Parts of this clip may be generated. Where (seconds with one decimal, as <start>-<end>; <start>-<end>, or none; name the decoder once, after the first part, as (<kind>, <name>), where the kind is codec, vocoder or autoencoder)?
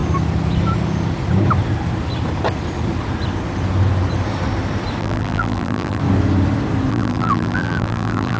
5.0-6.0 (vocoder, BigVGAN v2); 6.9-8.4